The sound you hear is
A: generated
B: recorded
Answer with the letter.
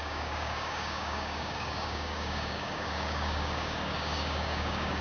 A